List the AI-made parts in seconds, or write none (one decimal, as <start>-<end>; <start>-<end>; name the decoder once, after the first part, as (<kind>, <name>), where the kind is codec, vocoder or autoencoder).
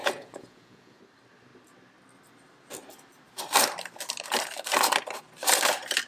0.0-1.0 (vocoder, Vocos)